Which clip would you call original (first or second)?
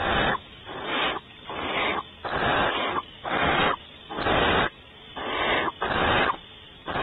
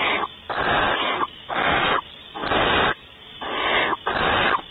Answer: second